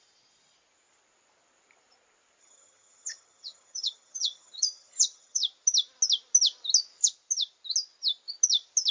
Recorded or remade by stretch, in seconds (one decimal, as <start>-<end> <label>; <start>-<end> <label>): 0.0-2.4 recorded; 2.4-5.4 remade; 5.4-8.9 recorded